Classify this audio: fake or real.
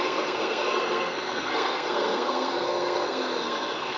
fake